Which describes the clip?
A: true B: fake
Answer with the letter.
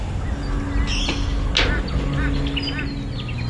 A